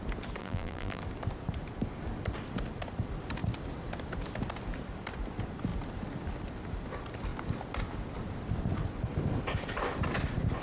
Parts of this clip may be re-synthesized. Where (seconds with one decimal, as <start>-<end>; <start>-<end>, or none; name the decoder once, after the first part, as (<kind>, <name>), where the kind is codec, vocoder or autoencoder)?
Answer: 0.4-1.0 (vocoder, BigVGAN v2)